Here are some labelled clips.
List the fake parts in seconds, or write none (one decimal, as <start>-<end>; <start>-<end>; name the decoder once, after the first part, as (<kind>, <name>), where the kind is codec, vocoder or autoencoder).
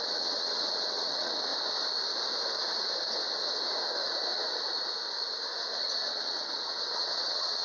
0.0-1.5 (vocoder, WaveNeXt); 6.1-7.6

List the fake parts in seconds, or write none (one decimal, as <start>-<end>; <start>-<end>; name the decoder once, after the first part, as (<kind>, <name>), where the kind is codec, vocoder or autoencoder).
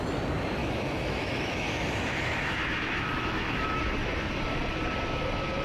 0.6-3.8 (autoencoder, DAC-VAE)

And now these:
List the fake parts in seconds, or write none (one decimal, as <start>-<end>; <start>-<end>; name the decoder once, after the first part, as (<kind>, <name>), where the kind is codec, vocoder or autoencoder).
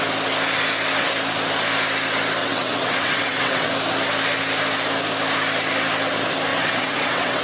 2.4-3.7 (vocoder, WaveNeXt); 6.5-7.4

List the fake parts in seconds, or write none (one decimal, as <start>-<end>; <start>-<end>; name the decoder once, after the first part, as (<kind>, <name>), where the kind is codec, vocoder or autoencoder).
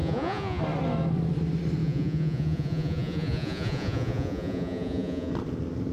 0.0-0.6 (vocoder, Vocos); 1.8-5.3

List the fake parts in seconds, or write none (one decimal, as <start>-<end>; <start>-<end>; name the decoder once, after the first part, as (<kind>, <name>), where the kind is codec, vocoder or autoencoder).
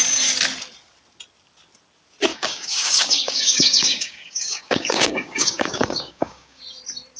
2.3-6.6 (codec, DAC)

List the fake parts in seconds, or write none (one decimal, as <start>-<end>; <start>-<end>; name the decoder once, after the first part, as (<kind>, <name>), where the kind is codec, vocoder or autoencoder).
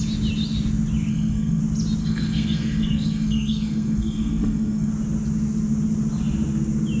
1.1-1.6 (codec, SNAC); 2.0-4.9